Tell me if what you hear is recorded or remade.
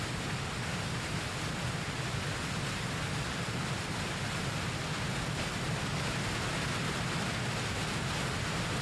recorded